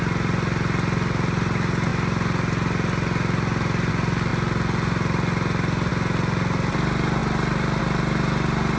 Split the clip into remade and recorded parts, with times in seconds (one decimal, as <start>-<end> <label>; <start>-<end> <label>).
0.0-8.8 recorded